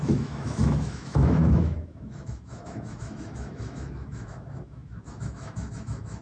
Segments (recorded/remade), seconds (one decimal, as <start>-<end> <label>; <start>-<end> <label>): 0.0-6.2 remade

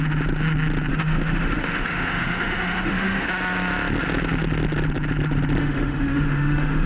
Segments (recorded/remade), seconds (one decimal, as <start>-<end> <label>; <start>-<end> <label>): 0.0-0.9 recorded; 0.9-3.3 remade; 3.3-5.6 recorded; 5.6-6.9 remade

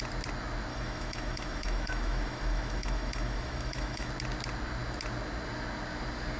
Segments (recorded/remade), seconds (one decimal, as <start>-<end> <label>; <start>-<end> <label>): 0.0-0.7 recorded; 0.7-4.1 remade; 4.1-6.4 recorded

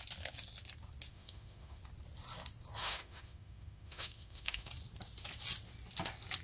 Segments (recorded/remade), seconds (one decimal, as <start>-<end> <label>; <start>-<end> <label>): 0.0-1.1 recorded; 1.1-1.8 remade; 1.8-2.8 recorded; 2.8-4.7 remade; 4.7-6.4 recorded

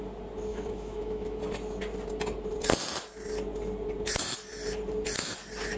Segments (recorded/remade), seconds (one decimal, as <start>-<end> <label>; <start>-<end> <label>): 0.0-0.5 recorded; 0.5-1.4 remade; 1.4-5.8 recorded

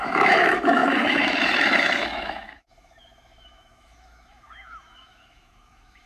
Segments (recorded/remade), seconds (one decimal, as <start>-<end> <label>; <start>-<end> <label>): 0.0-6.1 remade